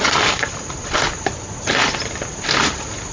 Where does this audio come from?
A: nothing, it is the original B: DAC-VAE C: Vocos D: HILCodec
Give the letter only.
A